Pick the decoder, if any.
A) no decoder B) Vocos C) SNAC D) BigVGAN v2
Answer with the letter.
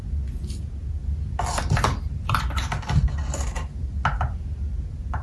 A